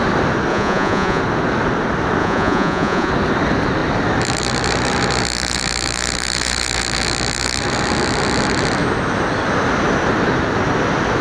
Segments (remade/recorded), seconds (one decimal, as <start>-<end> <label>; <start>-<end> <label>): 0.0-0.5 recorded; 0.5-1.2 remade; 1.2-2.2 recorded; 2.2-3.1 remade; 3.1-11.2 recorded